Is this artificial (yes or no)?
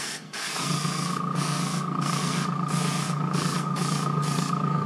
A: yes